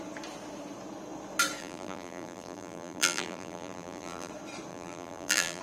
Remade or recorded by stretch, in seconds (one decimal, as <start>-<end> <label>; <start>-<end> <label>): 0.0-1.6 recorded; 1.6-4.3 remade; 4.3-4.7 recorded; 4.7-5.6 remade